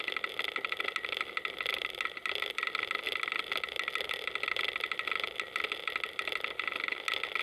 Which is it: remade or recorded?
recorded